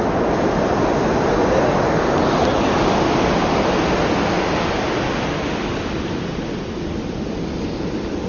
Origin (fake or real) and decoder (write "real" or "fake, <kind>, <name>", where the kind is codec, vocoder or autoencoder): real